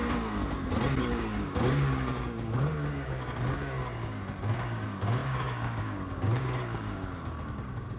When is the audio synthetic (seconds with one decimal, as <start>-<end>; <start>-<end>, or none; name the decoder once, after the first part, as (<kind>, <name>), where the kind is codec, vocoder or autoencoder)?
1.0-8.0 (codec, DAC)